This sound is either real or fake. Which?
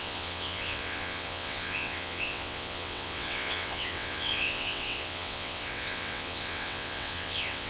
fake